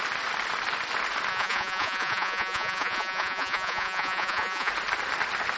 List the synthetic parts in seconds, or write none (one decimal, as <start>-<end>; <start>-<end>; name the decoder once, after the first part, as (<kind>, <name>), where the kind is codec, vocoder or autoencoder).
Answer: 1.3-4.7 (vocoder, Vocos)

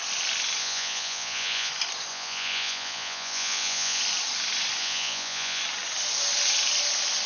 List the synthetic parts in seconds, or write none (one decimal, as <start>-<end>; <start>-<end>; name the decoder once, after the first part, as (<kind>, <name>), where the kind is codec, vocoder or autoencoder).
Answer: 0.6-1.7 (vocoder, Vocos); 2.1-4.0; 4.8-5.6

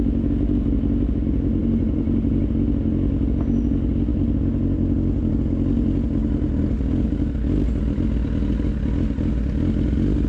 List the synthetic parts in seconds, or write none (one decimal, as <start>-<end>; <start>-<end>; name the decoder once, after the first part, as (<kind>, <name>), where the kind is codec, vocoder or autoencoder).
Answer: 1.6-2.4 (vocoder, BigVGAN v2)

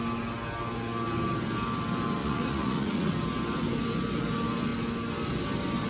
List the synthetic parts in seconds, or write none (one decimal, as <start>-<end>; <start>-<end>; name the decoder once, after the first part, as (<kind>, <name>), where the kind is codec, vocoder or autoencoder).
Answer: 2.2-3.1 (vocoder, Vocos)

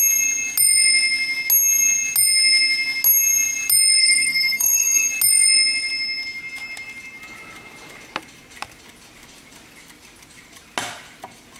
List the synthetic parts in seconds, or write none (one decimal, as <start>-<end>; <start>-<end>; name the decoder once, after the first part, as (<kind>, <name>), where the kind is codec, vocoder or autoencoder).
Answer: 4.0-5.1 (codec, SNAC)